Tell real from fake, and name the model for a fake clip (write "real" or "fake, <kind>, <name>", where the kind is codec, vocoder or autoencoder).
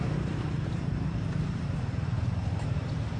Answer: fake, vocoder, BigVGAN v2